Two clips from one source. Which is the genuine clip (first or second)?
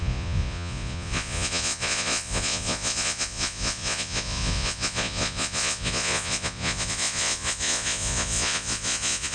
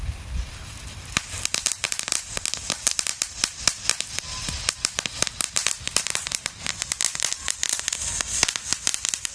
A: second